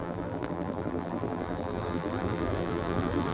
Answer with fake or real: fake